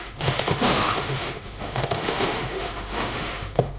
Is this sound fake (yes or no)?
yes